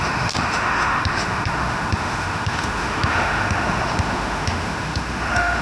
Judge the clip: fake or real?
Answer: fake